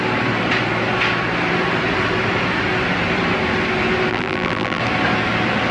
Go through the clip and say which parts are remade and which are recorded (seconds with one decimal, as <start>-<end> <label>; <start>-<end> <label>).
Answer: 0.0-4.1 recorded; 4.1-4.8 remade; 4.8-5.7 recorded